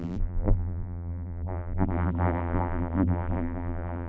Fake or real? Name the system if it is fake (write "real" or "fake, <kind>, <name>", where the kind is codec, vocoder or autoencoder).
fake, vocoder, BigVGAN v2